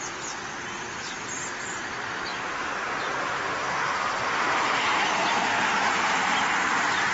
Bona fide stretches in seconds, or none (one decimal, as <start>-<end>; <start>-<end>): 0.0-2.3; 3.0-5.8